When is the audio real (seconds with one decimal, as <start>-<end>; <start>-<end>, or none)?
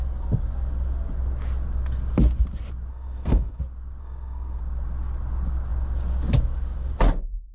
0.0-2.9; 3.6-4.0; 4.6-7.5